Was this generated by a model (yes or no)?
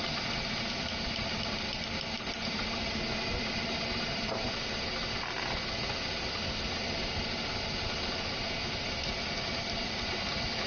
no